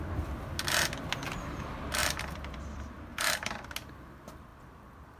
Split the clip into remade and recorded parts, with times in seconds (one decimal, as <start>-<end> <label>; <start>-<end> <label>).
0.0-2.0 recorded; 2.0-3.7 remade; 3.7-4.5 recorded; 4.5-5.2 remade